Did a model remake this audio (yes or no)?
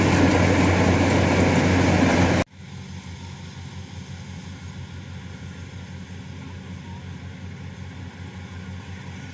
no